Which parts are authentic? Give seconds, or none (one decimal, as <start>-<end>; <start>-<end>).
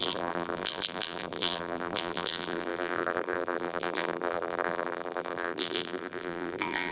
none